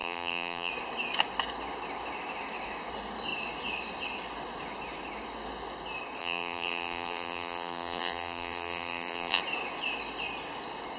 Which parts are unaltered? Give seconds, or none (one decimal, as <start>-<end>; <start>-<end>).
0.7-6.2; 9.4-11.0